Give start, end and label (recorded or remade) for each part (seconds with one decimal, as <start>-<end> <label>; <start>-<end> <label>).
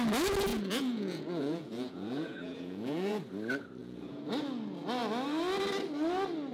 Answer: 0.0-0.5 recorded; 0.5-3.2 remade; 3.2-3.8 recorded; 3.8-4.3 remade; 4.3-6.5 recorded